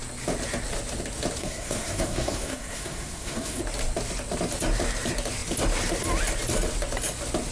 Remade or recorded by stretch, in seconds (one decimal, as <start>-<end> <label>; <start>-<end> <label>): 0.0-1.4 recorded; 1.4-3.6 remade; 3.6-7.5 recorded